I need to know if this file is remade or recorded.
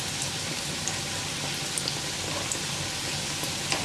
recorded